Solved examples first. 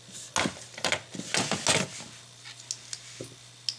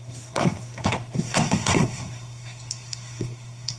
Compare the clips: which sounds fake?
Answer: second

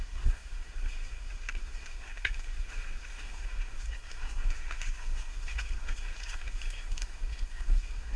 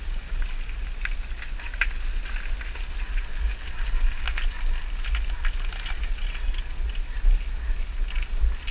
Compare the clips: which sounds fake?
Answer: first